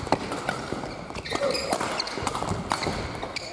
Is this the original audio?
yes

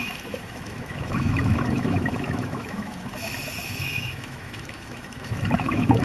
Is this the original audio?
no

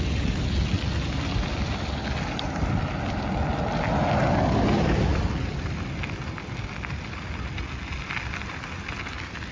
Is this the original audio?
yes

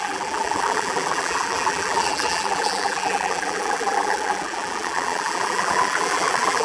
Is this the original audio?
no